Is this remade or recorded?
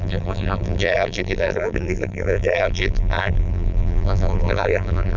remade